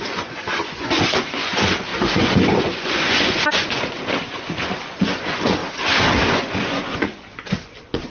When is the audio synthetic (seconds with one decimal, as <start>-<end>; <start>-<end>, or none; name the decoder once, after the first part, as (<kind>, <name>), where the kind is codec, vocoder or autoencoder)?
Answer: 0.0-5.6 (vocoder, Vocos); 6.2-8.1